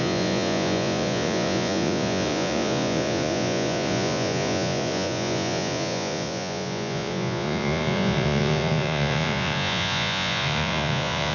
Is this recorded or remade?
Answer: remade